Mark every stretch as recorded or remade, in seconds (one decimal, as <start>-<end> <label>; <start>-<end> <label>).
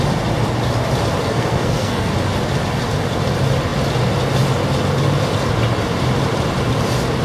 0.0-1.2 recorded; 1.2-2.1 remade; 2.1-7.2 recorded